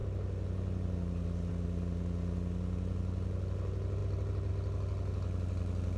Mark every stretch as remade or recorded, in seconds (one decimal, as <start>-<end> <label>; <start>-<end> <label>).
0.0-6.0 recorded